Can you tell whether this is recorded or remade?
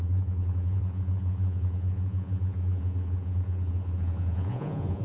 remade